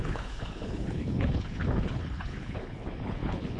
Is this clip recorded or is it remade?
remade